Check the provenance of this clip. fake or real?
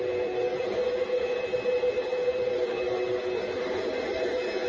real